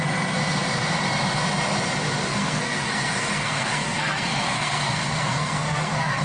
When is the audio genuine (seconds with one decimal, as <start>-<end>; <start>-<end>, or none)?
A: 0.0-2.3